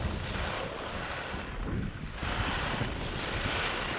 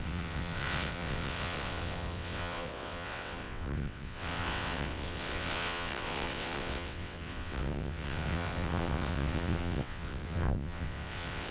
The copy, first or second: second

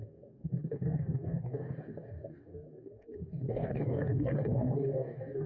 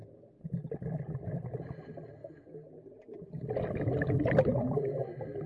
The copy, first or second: first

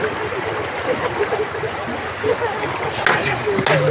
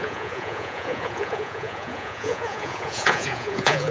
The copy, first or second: second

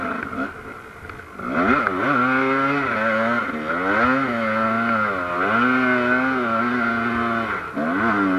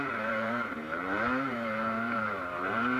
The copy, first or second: second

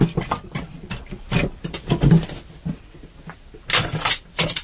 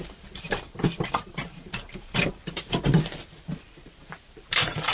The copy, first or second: second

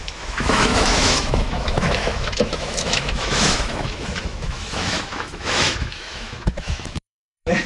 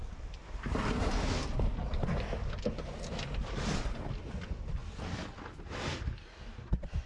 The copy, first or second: first